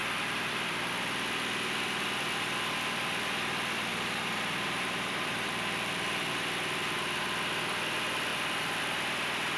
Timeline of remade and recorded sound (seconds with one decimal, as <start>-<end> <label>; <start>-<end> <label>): 0.0-0.9 remade; 0.9-3.9 recorded; 3.9-6.3 remade; 6.3-8.3 recorded; 8.3-8.8 remade; 8.8-9.6 recorded